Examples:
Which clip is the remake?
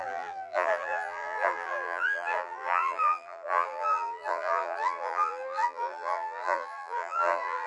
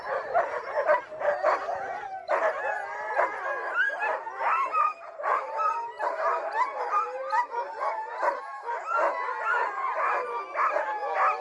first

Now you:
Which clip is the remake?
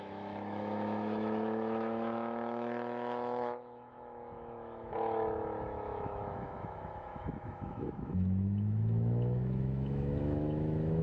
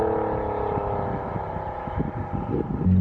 first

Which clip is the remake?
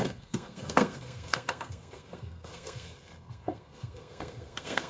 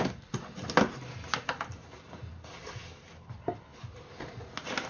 first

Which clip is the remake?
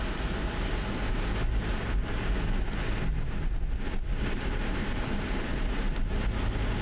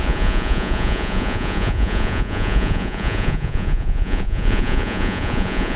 second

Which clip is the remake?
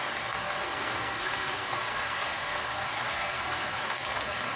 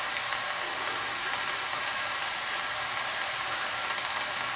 first